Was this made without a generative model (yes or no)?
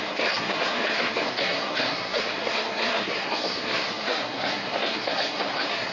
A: no